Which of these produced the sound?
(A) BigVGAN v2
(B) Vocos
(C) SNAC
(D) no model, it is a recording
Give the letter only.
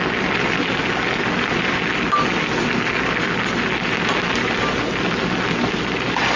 D